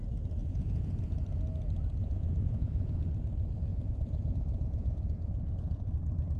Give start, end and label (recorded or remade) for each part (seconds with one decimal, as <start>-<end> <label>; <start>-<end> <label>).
0.0-0.4 recorded; 0.4-1.0 remade; 1.0-2.0 recorded; 2.0-3.1 remade; 3.1-3.7 recorded; 3.7-5.9 remade; 5.9-6.4 recorded